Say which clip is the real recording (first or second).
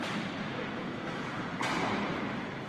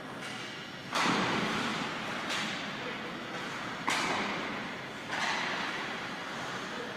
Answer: second